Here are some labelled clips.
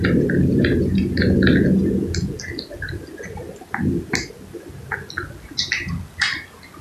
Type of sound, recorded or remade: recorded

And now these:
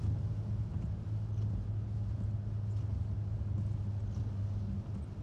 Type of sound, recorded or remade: recorded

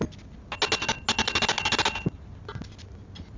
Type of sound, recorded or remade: recorded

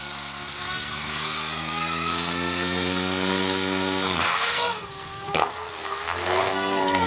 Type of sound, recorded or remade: remade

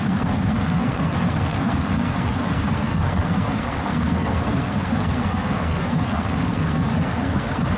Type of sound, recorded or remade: remade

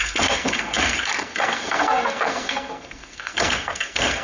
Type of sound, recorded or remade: remade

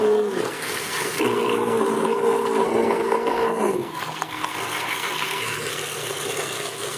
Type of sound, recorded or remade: remade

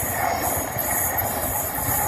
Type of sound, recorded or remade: recorded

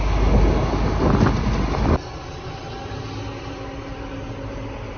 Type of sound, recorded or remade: recorded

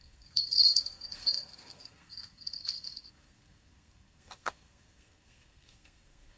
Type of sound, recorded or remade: remade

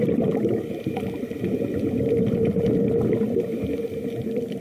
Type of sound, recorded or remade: recorded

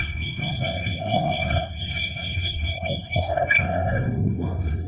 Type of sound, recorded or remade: remade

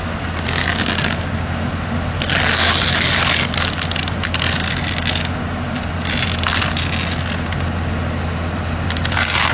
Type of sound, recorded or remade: recorded